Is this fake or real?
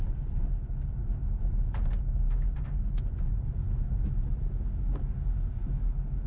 real